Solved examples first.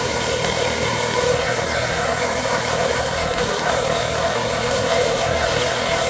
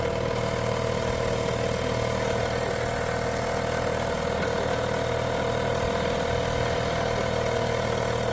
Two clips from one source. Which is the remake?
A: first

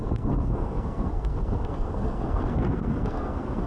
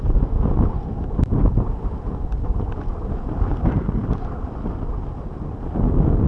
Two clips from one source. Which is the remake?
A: first